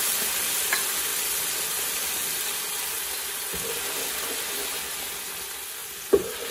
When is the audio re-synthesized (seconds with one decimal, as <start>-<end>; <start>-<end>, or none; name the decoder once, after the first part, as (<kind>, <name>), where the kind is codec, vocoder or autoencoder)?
5.8-6.5 (vocoder, BigVGAN v2)